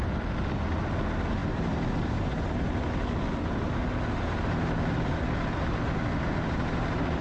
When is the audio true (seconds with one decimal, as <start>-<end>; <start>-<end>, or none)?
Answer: 0.0-7.2